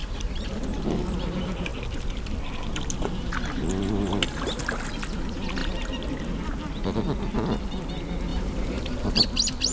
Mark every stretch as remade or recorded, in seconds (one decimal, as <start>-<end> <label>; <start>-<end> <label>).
0.0-0.6 remade; 0.6-8.3 recorded; 8.3-9.2 remade; 9.2-9.7 recorded